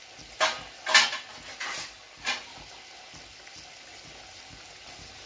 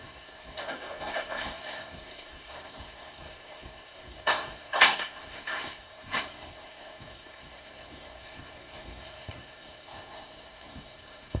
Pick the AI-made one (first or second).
second